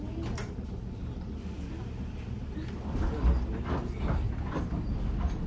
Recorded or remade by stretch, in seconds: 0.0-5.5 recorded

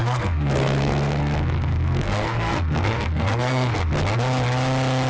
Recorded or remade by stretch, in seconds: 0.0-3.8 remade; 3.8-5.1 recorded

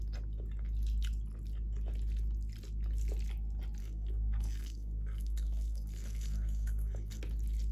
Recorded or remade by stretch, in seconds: 0.0-3.8 recorded; 3.8-7.2 remade; 7.2-7.7 recorded